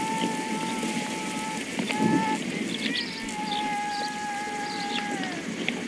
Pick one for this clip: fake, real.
real